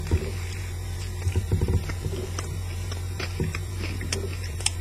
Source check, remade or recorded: remade